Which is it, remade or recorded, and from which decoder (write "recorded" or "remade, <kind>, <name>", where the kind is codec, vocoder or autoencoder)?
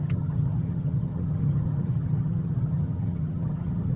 remade, vocoder, HiFi-GAN